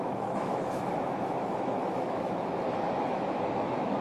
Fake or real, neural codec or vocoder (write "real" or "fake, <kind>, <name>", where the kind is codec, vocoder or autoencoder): fake, autoencoder, DAC-VAE